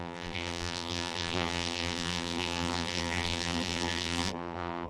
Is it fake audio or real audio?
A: fake